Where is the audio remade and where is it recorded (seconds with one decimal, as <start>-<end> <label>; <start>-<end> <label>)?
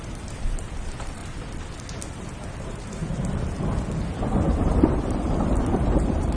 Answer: 0.0-1.2 remade; 1.2-2.6 recorded; 2.6-3.0 remade; 3.0-4.3 recorded; 4.3-6.4 remade